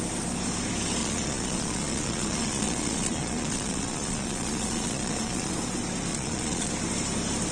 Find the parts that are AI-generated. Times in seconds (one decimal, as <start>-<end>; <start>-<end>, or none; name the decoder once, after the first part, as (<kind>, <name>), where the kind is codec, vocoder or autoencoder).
1.0-5.5 (vocoder, Vocos); 6.1-6.7